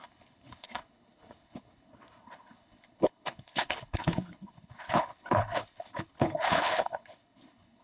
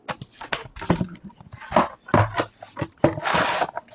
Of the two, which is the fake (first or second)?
first